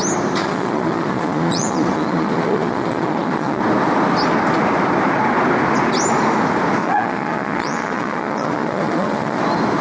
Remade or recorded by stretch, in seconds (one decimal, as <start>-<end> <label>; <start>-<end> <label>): 0.0-0.4 recorded; 0.4-3.6 remade; 3.6-6.8 recorded; 6.8-9.4 remade; 9.4-9.8 recorded